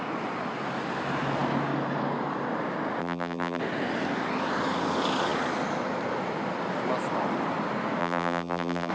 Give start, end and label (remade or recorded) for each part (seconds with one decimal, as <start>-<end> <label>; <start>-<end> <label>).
0.0-3.0 recorded; 3.0-3.6 remade; 3.6-8.0 recorded; 8.0-8.9 remade